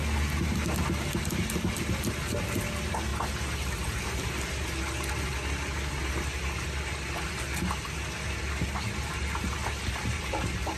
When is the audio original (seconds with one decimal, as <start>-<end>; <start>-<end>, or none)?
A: 0.0-9.6; 10.2-10.8